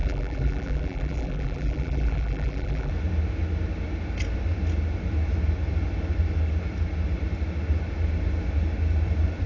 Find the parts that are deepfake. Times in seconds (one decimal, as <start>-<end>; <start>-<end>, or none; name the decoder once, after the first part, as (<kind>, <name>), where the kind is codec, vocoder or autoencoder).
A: 0.0-2.9 (vocoder, BigVGAN v2)